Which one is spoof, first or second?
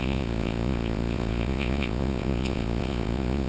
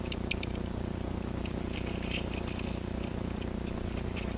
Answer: first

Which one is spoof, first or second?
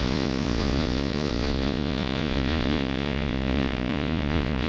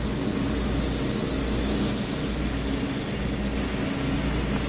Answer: first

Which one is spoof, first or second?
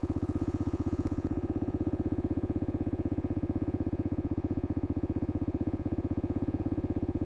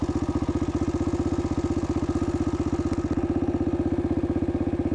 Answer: first